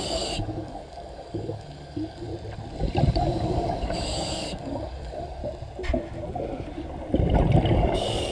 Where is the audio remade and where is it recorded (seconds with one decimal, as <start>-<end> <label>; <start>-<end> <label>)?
0.0-2.3 remade; 2.3-3.2 recorded; 3.2-5.4 remade; 5.4-7.7 recorded; 7.7-8.3 remade